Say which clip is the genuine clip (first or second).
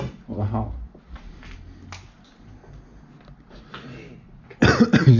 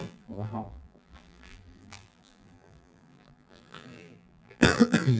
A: first